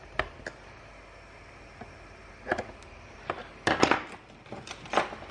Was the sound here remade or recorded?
recorded